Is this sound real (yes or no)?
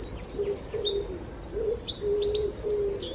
yes